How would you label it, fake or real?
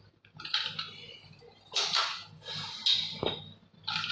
real